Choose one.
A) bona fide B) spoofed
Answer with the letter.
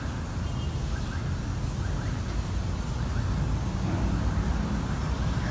A